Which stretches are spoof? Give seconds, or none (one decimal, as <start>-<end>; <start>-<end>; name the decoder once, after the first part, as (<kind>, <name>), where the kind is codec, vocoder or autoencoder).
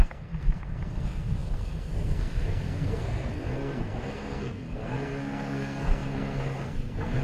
0.0-7.2 (codec, SNAC)